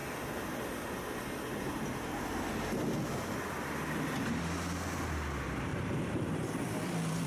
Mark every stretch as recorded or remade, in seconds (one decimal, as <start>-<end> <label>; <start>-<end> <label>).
0.0-5.7 recorded; 5.7-7.3 remade